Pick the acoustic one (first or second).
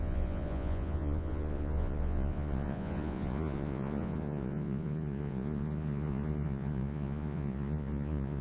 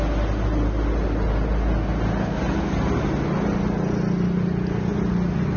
second